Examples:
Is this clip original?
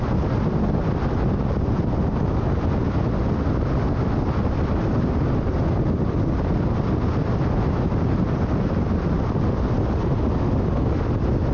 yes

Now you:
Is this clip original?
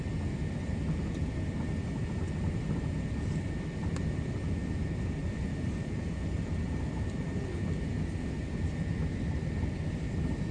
yes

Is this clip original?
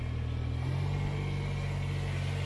yes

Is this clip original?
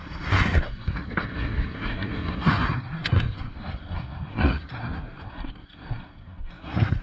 no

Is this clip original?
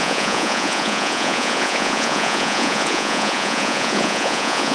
no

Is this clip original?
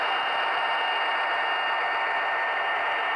yes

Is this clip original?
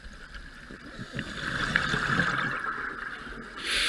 yes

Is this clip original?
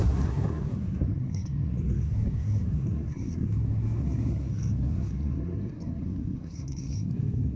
no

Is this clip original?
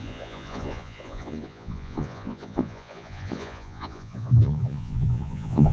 no